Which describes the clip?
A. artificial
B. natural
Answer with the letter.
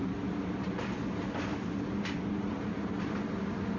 B